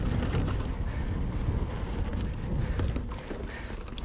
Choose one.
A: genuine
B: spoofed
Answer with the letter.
A